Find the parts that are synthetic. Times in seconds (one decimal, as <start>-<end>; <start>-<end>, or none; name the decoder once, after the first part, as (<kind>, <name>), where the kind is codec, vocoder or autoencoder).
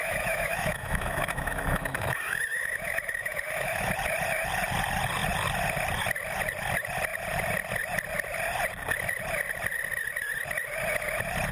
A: 0.0-3.9 (autoencoder, DAC-VAE)